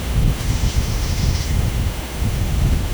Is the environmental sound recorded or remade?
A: remade